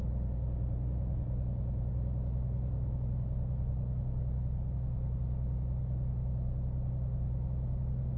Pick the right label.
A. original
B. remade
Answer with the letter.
A